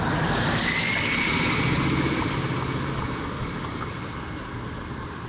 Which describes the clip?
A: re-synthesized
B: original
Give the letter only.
B